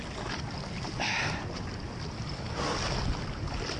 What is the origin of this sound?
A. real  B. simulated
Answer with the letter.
A